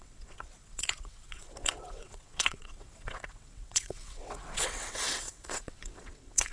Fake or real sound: fake